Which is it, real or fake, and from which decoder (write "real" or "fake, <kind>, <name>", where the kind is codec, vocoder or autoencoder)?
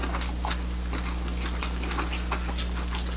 real